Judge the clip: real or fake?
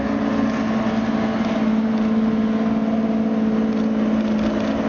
real